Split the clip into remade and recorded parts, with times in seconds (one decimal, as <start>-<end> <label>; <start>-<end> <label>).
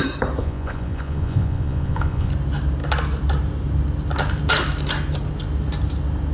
0.0-0.4 recorded; 0.4-2.3 remade; 2.3-6.3 recorded